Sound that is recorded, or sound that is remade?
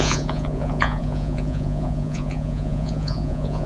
remade